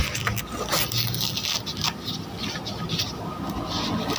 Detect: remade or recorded recorded